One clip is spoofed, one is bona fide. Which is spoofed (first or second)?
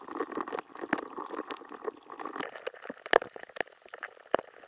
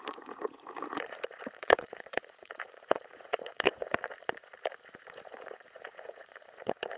second